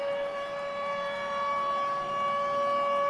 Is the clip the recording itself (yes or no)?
yes